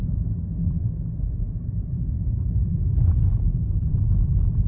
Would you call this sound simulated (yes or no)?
yes